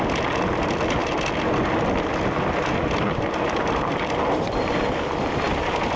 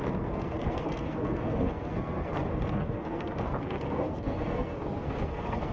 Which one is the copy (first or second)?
second